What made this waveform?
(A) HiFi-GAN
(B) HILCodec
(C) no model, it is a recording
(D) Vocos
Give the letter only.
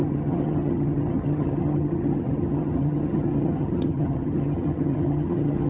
A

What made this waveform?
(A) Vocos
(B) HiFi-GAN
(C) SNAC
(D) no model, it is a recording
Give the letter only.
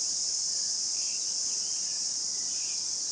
D